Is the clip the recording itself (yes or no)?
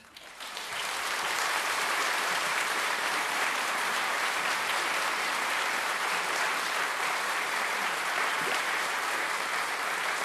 no